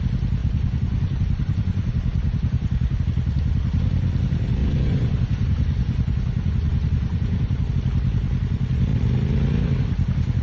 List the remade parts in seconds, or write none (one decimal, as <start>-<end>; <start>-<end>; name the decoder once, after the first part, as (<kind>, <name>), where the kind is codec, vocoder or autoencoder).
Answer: 0.4-3.0 (vocoder, Vocos); 4.6-7.7